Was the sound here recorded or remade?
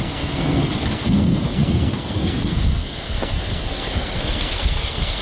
remade